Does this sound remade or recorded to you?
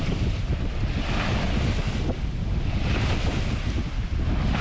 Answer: recorded